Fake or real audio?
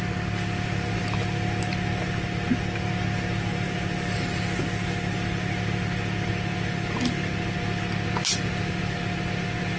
real